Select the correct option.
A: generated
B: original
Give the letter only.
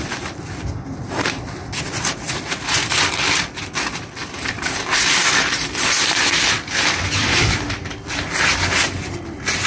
A